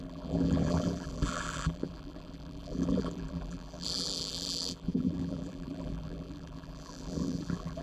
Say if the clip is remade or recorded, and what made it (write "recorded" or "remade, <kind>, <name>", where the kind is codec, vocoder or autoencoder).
remade, vocoder, BigVGAN v2